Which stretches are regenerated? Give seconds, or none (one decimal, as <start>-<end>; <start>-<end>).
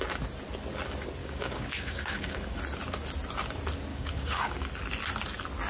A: 1.2-2.6; 3.9-4.7